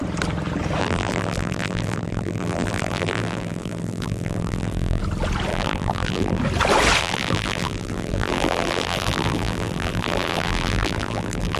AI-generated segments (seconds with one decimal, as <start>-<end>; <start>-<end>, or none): 0.8-5.0; 5.5-6.4; 7.0-11.6